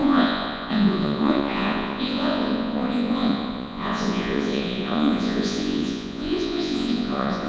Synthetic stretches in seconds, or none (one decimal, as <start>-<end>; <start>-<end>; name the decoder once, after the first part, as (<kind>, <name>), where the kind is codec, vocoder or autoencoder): 0.0-7.5 (vocoder, Vocos)